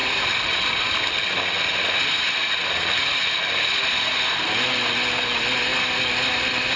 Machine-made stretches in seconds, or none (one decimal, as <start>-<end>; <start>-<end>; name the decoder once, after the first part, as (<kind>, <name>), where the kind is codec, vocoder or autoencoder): none